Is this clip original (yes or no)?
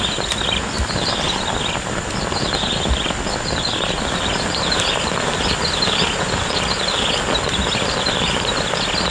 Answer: yes